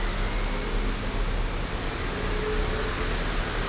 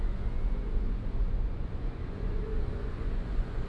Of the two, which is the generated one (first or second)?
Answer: second